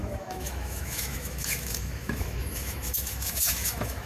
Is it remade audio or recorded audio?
remade